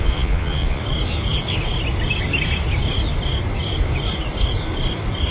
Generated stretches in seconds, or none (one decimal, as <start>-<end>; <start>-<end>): 0.0-0.8